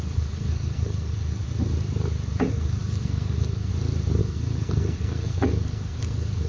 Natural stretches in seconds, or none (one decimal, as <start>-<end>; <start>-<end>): 1.4-2.5; 3.7-4.2